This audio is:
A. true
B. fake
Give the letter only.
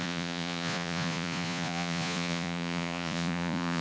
B